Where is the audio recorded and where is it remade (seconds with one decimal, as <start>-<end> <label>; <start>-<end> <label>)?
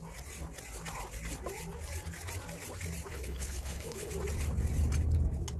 0.0-3.1 recorded; 3.1-4.1 remade; 4.1-5.6 recorded